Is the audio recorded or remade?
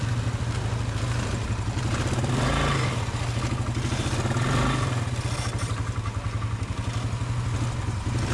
recorded